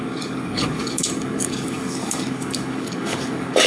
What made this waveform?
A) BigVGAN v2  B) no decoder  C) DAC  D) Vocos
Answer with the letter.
C